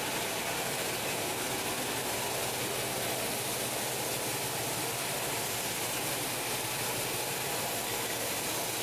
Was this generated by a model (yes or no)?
no